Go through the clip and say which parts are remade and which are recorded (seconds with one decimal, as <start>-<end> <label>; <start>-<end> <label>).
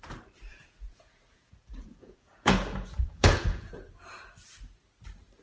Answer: 0.0-0.5 recorded; 0.5-3.7 remade; 3.7-5.4 recorded